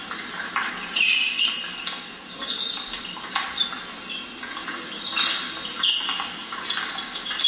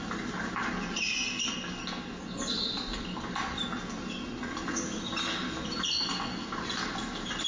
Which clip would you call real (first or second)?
second